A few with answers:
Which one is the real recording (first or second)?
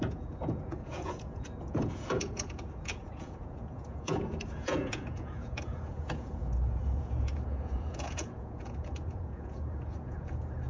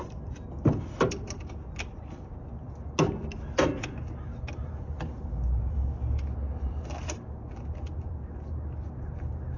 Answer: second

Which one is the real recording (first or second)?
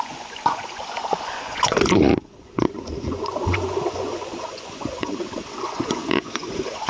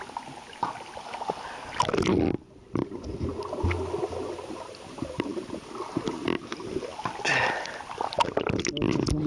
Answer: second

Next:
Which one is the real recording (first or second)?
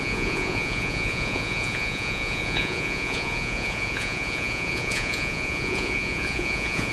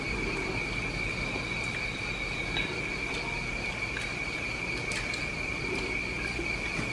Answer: second